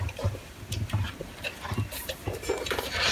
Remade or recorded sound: remade